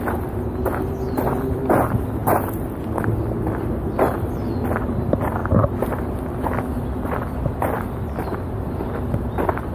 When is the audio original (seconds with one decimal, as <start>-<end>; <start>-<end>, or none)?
0.0-9.7

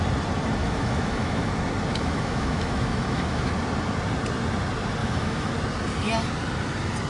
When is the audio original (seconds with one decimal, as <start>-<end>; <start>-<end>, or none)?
0.0-0.6; 1.5-1.9; 3.5-5.0; 5.5-7.1

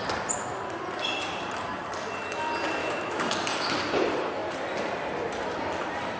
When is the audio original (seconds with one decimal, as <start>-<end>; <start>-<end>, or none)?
0.0-2.8; 3.3-6.2

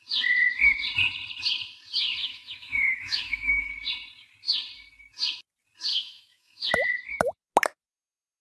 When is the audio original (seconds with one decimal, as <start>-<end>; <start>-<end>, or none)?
0.0-2.2; 3.7-5.9; 6.7-8.4

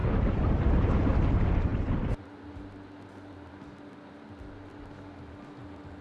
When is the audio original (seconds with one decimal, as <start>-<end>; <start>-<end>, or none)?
0.0-6.0

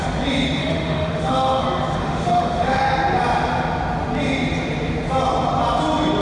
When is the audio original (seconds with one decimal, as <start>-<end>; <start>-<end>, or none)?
0.0-0.6; 1.6-2.0; 2.8-6.2